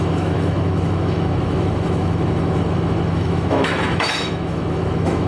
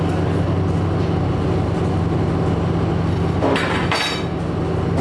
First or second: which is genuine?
second